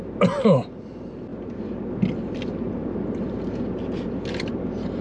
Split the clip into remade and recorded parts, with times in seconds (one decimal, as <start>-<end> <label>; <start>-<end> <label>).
0.0-5.0 recorded